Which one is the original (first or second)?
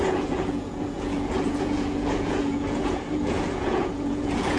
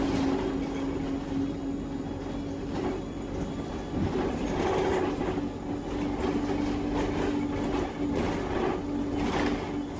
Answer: second